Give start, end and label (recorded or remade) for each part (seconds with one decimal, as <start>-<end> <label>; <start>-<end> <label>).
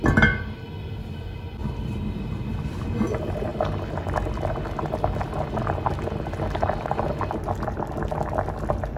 0.0-9.0 recorded